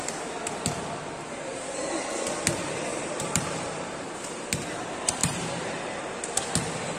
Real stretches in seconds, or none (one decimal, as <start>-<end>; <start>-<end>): 0.0-1.5; 2.1-2.9; 4.5-5.2; 6.2-7.0